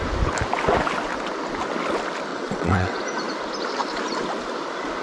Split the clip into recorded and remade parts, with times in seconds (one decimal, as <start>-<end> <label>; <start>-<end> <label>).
0.0-2.3 recorded; 2.3-3.0 remade; 3.0-5.0 recorded